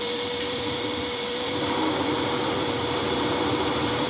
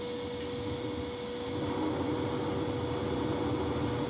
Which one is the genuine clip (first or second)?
second